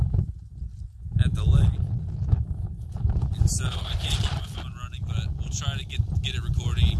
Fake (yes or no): no